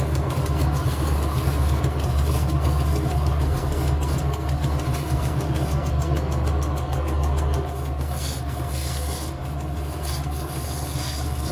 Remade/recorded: remade